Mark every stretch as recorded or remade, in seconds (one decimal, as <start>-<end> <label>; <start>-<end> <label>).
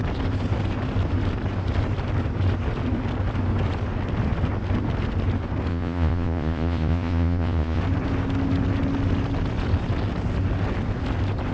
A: 0.0-5.7 recorded; 5.7-7.8 remade; 7.8-11.5 recorded